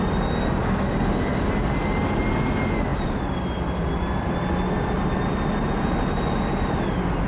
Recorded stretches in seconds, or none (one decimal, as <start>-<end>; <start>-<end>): 0.0-0.6; 1.5-7.3